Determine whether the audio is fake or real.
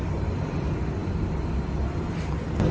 real